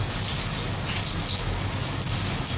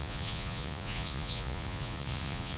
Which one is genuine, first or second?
first